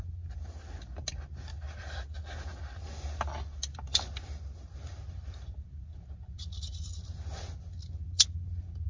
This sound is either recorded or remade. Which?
recorded